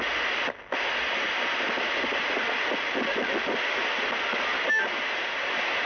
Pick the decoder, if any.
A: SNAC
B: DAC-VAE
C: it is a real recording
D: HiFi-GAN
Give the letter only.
C